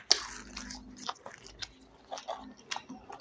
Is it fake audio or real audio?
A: real